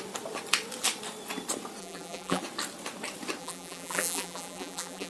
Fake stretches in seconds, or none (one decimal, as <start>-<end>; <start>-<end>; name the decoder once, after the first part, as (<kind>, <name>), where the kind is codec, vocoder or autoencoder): 1.8-2.4 (vocoder, BigVGAN v2); 3.4-5.1